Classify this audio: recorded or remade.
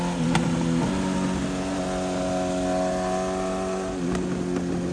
recorded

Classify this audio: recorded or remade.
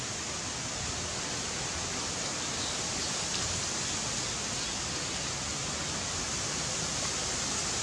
recorded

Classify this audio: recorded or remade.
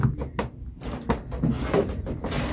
recorded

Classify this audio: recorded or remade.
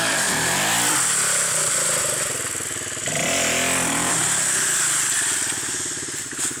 recorded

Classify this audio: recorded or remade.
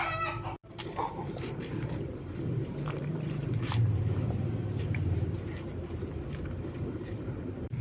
remade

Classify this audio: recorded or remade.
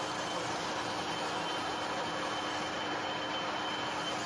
recorded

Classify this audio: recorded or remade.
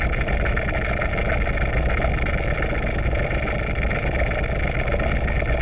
recorded